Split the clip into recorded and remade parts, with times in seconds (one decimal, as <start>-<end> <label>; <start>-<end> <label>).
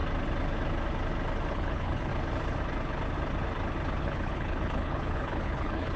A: 0.0-1.5 recorded; 1.5-2.1 remade; 2.1-4.0 recorded; 4.0-6.0 remade